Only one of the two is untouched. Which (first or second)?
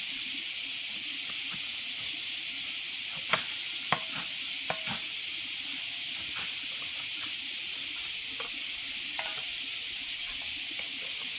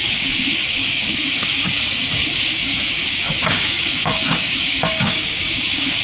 first